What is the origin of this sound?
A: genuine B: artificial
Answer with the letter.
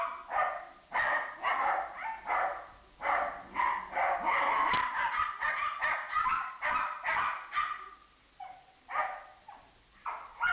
A